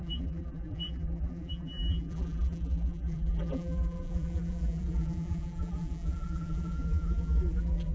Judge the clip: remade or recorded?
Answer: remade